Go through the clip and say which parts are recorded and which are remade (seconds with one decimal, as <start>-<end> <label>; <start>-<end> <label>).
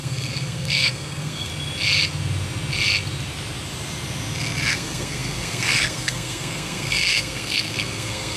0.0-1.5 remade; 1.5-4.7 recorded; 4.7-8.4 remade